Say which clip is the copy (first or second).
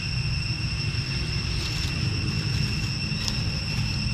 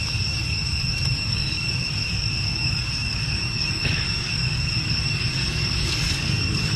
second